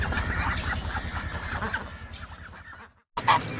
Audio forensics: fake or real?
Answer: real